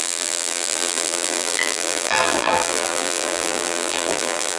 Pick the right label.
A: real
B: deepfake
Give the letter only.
B